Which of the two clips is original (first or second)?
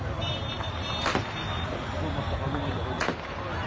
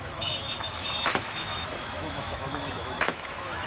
first